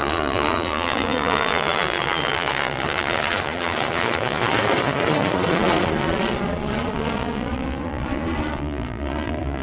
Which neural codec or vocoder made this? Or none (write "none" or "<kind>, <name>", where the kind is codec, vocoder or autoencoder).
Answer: vocoder, Vocos